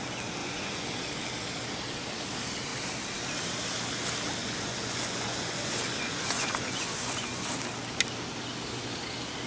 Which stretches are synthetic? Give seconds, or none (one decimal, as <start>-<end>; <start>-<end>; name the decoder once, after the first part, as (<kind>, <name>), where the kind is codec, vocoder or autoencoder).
0.4-1.0 (vocoder, Vocos); 4.4-7.5